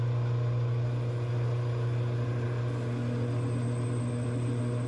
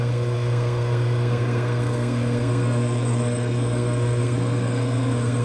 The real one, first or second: first